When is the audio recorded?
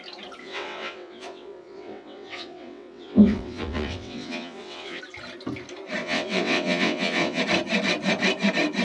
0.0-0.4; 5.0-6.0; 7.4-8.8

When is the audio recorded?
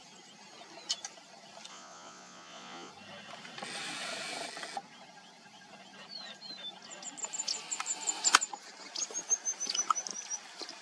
0.0-1.7; 2.9-10.8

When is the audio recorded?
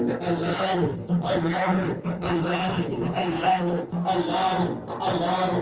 0.0-0.5; 3.9-5.6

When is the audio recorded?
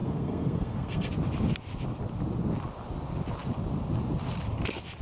1.1-5.0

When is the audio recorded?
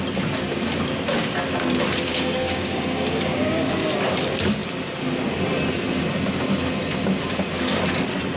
0.0-2.1; 3.6-8.4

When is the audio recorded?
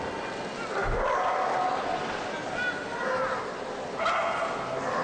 0.0-5.0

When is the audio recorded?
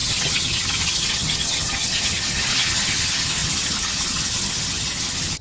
none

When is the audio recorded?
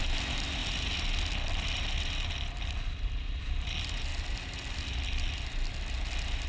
0.0-6.5